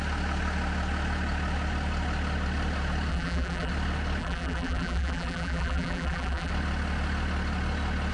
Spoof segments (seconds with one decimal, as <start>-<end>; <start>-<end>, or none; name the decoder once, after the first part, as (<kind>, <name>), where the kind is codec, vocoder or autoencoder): 3.1-3.7 (vocoder, BigVGAN v2); 4.2-6.5